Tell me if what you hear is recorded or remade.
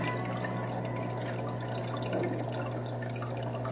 recorded